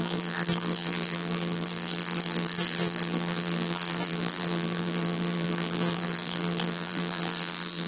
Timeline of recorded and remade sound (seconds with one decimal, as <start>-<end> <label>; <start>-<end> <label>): 0.0-7.9 remade